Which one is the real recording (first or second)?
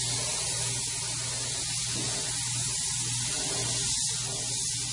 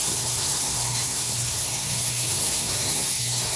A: first